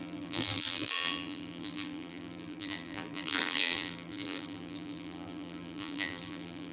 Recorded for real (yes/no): no